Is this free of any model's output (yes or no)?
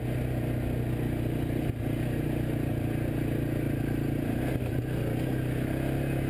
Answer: yes